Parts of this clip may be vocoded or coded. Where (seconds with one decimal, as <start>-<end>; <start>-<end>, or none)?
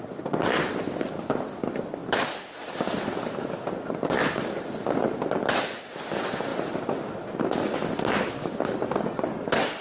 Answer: none